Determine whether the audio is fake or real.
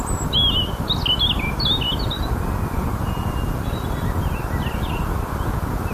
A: real